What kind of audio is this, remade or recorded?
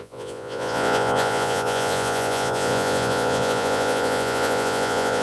remade